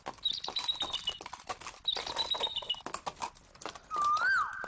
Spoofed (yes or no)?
no